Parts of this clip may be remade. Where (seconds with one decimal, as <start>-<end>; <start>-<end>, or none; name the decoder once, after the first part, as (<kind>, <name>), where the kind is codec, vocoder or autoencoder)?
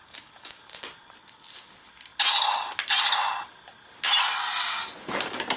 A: 0.0-0.6 (codec, DAC)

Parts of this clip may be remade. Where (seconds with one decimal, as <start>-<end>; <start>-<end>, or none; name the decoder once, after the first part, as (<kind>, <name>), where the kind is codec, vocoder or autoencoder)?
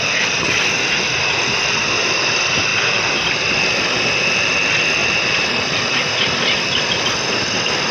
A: none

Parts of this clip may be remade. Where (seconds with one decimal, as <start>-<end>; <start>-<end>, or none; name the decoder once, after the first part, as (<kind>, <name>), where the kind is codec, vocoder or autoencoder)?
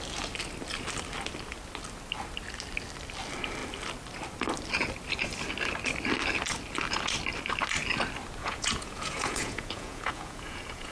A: 8.4-10.9 (vocoder, Vocos)